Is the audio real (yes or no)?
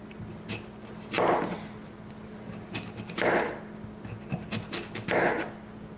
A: yes